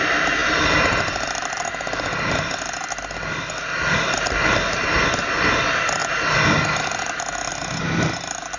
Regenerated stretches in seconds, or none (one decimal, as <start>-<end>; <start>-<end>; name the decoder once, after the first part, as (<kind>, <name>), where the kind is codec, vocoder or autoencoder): none